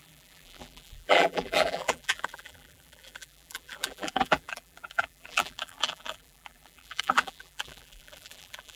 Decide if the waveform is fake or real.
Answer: fake